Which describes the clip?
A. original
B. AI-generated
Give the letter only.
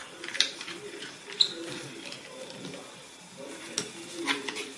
A